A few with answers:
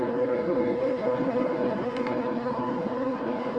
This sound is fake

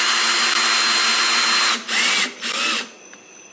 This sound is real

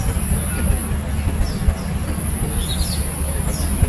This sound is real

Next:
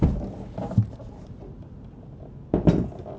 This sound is real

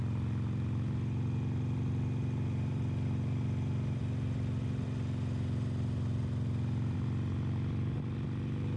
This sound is real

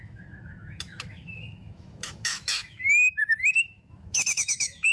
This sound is fake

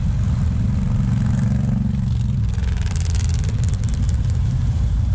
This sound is real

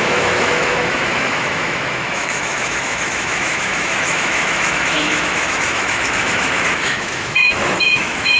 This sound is fake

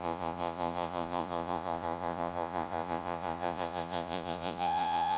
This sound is fake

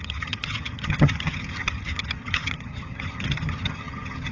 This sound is fake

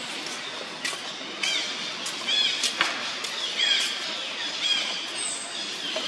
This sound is real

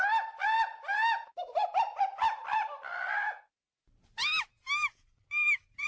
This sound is real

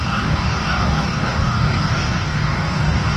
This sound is fake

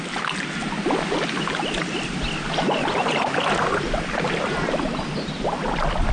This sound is real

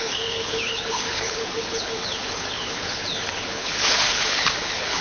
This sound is fake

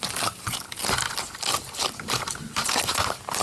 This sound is real